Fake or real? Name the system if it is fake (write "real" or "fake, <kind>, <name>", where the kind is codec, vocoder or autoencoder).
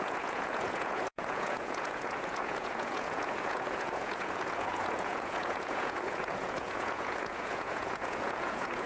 fake, vocoder, Vocos